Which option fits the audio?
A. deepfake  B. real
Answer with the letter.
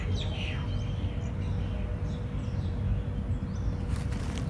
B